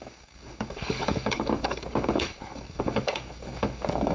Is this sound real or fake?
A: fake